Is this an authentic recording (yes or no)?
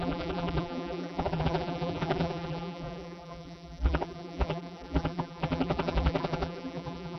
no